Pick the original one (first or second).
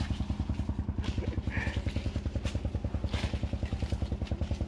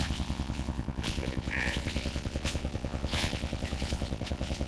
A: first